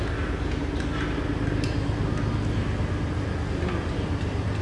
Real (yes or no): yes